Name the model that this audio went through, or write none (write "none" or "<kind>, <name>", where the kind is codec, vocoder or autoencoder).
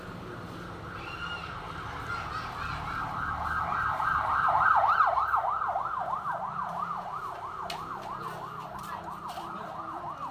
none